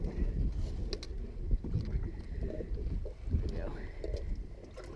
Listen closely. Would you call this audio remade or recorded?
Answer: recorded